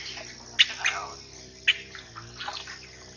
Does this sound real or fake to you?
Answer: real